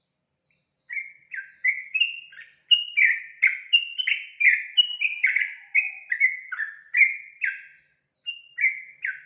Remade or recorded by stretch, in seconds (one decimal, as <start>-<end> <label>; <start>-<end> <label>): 0.0-9.3 recorded